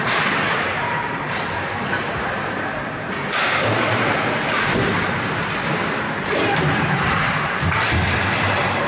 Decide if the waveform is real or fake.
fake